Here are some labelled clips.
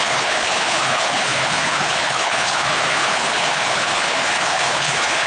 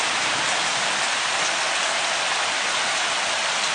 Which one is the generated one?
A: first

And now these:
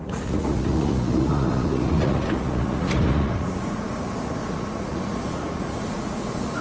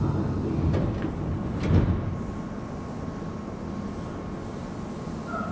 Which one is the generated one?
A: first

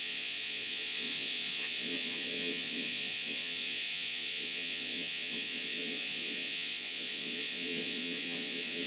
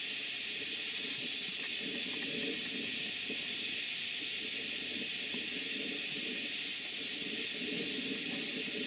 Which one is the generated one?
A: first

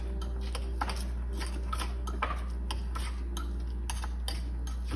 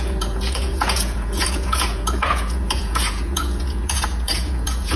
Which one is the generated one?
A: second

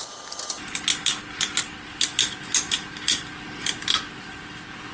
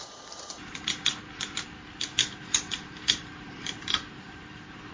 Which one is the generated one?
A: second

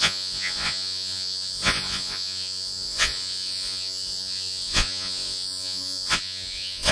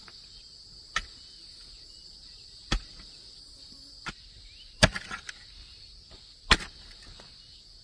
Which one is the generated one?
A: first